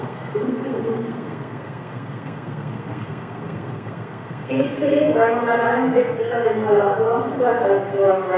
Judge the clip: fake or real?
fake